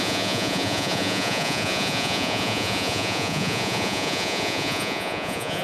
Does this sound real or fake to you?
fake